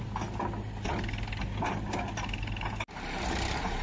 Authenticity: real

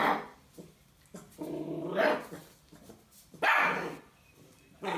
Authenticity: real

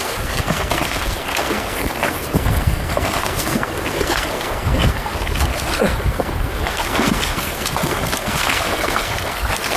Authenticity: fake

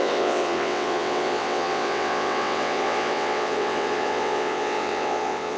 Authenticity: fake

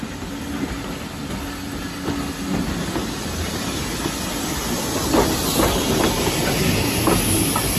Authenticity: real